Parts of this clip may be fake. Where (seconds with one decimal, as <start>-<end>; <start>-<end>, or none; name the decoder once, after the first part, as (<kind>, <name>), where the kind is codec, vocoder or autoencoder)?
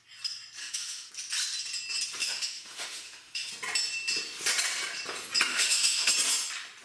0.6-1.1 (autoencoder, DAC-VAE); 2.2-3.5; 5.5-6.1